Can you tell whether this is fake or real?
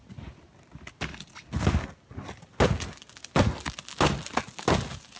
real